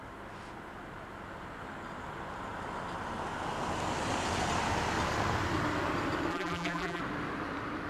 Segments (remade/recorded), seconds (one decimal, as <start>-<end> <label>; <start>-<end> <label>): 0.0-6.3 recorded; 6.3-7.0 remade; 7.0-7.9 recorded